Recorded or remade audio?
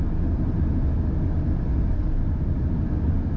recorded